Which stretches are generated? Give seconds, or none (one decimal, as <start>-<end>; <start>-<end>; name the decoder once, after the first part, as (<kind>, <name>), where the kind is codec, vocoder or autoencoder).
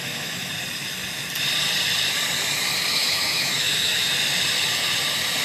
0.0-0.5 (autoencoder, DAC-VAE); 2.9-4.1